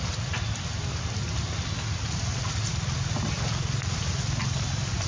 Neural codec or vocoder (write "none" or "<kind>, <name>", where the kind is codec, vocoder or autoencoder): none